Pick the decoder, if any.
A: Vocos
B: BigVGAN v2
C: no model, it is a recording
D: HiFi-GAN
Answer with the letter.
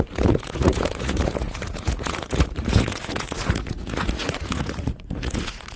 A